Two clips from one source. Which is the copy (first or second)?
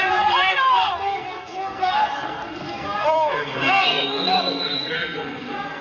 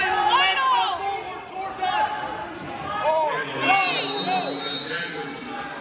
first